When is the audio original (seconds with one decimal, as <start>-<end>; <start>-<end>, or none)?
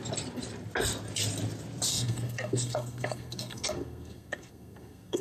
0.0-1.9